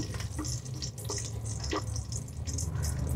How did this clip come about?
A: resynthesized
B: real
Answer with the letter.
B